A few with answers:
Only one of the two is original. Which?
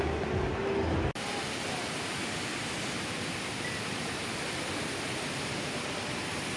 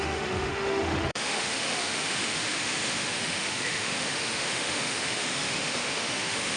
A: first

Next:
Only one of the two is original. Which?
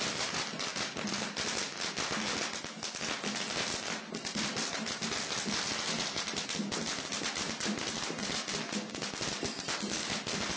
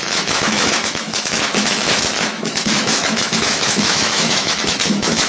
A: first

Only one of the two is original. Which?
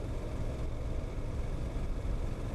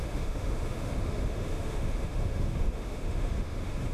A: first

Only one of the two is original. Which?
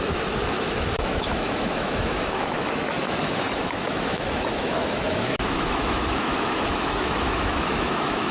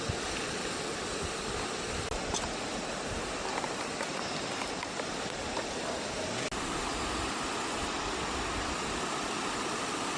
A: second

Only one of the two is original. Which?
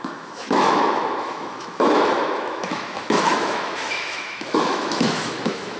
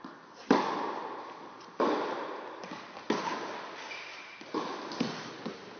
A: second